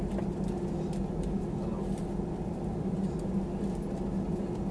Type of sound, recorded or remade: recorded